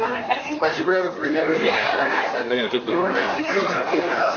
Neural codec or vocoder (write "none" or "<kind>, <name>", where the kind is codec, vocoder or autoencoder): codec, SNAC